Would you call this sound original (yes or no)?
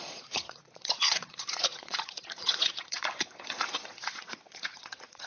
no